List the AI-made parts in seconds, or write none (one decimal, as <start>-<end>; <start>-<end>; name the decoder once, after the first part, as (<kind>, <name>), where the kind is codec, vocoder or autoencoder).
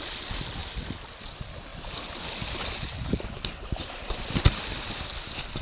none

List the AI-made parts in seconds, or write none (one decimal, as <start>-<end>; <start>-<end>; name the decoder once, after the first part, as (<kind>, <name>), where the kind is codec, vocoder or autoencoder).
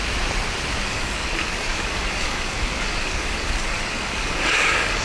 0.8-5.0 (codec, DAC)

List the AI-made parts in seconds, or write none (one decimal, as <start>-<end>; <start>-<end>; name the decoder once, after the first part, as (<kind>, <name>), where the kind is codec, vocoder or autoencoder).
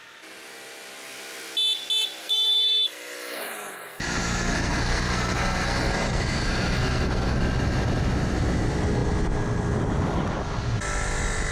2.2-7.4 (codec, SNAC)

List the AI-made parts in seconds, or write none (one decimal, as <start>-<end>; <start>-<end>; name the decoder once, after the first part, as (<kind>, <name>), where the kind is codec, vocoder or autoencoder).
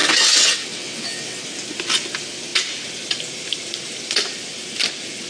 0.0-1.4 (vocoder, WaveNeXt)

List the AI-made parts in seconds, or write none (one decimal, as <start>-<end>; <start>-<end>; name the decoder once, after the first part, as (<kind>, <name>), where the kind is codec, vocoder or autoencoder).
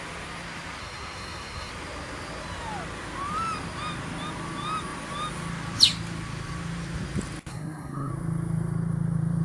0.8-1.7 (codec, SNAC); 7.5-8.1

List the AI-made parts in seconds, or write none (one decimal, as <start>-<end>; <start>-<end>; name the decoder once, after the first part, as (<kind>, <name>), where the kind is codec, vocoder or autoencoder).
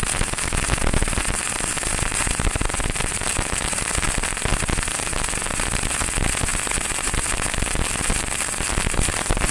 none